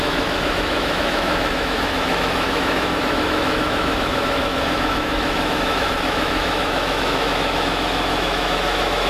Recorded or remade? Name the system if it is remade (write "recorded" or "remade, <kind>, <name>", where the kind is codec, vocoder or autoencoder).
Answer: remade, autoencoder, DAC-VAE